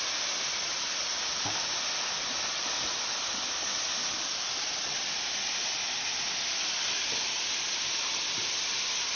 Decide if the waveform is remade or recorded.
recorded